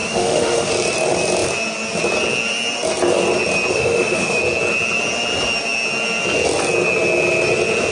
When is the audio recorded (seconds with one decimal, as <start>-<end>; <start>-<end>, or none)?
0.7-3.7; 4.4-7.9